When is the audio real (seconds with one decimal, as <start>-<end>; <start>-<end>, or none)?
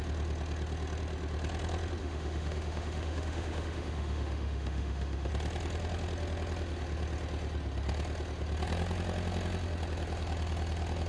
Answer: 0.0-2.0; 5.3-11.1